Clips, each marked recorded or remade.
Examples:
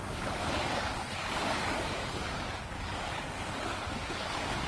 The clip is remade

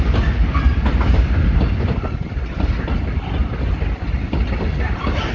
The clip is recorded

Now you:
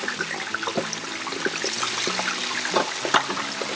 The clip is recorded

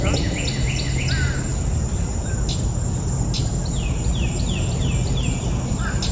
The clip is recorded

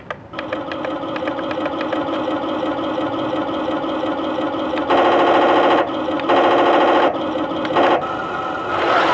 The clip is recorded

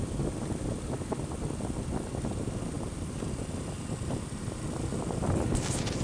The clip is recorded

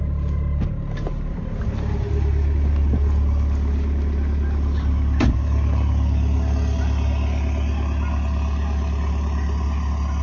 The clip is recorded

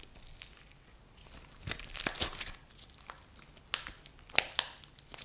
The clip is recorded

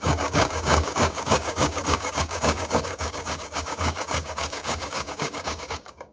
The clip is remade